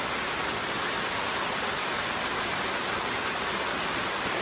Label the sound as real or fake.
real